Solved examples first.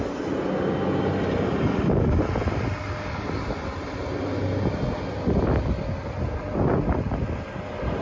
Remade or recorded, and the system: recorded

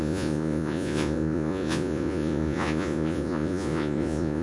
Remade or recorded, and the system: remade, vocoder, Vocos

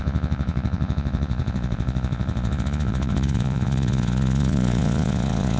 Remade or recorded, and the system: remade, vocoder, Vocos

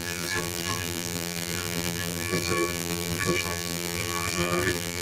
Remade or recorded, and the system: remade, vocoder, BigVGAN v2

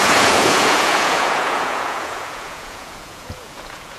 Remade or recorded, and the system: remade, vocoder, Vocos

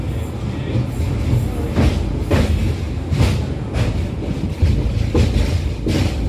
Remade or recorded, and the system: recorded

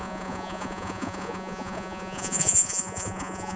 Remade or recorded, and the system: remade, vocoder, Vocos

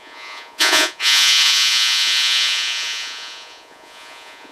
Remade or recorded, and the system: remade, vocoder, Vocos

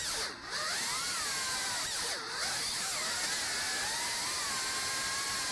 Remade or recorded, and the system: recorded